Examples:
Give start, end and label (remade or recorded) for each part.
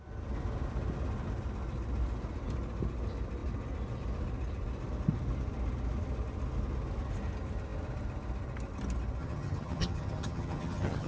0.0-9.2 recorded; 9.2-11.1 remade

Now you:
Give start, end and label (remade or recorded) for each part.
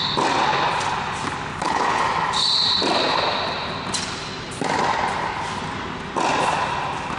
0.0-1.5 recorded; 1.5-2.0 remade; 2.0-7.2 recorded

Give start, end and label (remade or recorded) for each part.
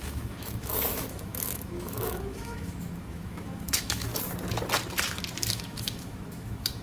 0.0-4.1 remade; 4.1-5.5 recorded; 5.5-6.8 remade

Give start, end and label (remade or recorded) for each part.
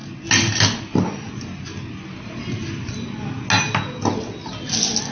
0.0-5.1 recorded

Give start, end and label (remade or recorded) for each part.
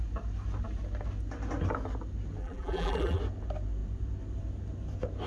0.0-2.4 recorded; 2.4-3.2 remade; 3.2-5.3 recorded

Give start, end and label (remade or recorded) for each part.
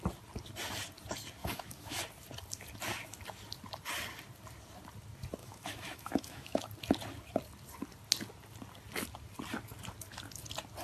0.0-1.4 recorded; 1.4-2.0 remade; 2.0-5.4 recorded; 5.4-6.6 remade; 6.6-10.8 recorded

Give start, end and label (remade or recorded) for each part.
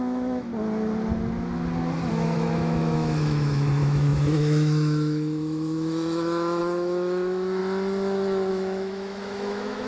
0.0-0.5 remade; 0.5-2.1 recorded; 2.1-7.6 remade; 7.6-8.5 recorded; 8.5-9.9 remade